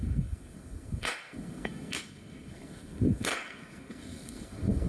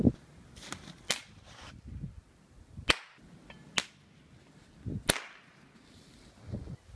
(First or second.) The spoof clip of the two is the first